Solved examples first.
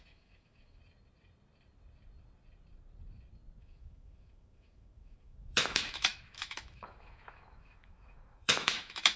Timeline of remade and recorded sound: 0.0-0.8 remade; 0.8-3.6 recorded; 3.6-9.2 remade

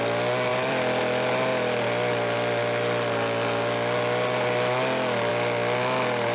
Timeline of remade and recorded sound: 0.0-0.5 recorded; 0.5-1.0 remade; 1.0-6.3 recorded

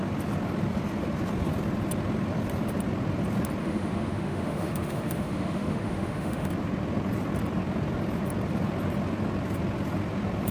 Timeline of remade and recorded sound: 0.0-3.6 recorded; 3.6-6.5 remade; 6.5-10.5 recorded

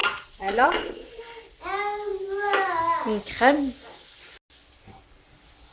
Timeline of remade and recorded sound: 0.0-1.2 remade; 1.2-5.7 recorded

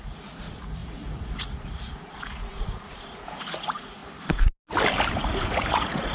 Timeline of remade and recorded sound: 0.0-4.0 remade; 4.0-5.1 recorded; 5.1-6.1 remade